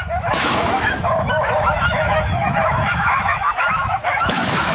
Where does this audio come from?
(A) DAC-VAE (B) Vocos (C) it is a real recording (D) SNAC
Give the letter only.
A